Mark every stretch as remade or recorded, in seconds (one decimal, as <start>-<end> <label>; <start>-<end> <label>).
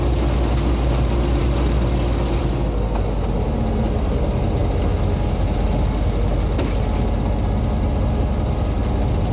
0.0-9.3 recorded